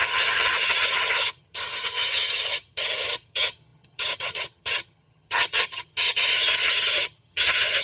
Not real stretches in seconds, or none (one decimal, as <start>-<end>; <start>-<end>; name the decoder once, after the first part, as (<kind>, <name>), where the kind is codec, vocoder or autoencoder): 0.0-7.8 (vocoder, HiFi-GAN)